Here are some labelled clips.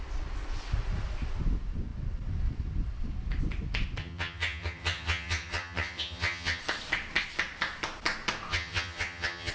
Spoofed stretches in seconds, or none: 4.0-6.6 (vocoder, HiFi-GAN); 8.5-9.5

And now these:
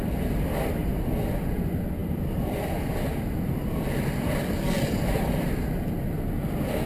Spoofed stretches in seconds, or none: 0.0-0.8 (vocoder, BigVGAN v2); 1.5-6.9

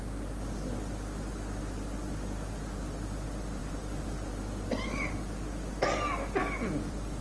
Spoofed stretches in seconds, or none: 3.6-4.3 (vocoder, BigVGAN v2); 6.4-7.2

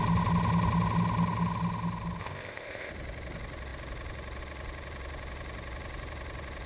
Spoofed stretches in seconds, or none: 2.2-2.9 (codec, ZipCodec)

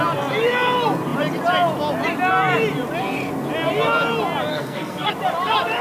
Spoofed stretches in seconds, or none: 4.5-5.1 (codec, SNAC)

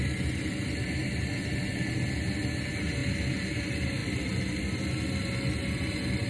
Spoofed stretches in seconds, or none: none

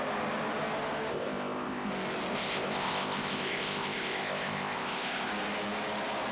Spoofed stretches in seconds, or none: 1.1-1.9 (codec, ZipCodec); 2.3-5.3

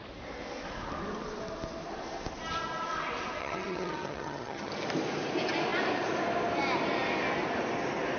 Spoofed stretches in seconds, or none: 3.4-4.7 (vocoder, HiFi-GAN)